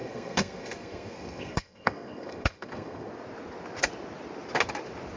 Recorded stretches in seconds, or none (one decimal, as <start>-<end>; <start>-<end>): 3.1-5.2